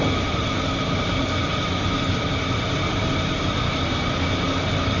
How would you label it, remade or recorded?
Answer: recorded